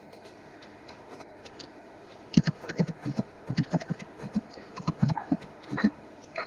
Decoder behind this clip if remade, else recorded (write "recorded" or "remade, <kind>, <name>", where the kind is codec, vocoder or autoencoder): remade, autoencoder, DAC-VAE